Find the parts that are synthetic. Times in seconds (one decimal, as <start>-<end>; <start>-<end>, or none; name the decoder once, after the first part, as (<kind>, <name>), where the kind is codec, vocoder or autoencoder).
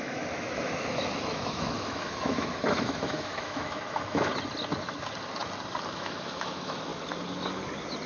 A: 0.0-4.3 (autoencoder, DAC-VAE); 5.9-6.9